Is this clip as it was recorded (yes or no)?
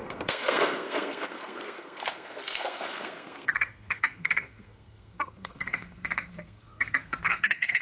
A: no